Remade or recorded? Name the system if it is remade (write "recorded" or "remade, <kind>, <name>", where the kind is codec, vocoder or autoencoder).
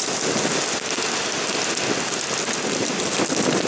recorded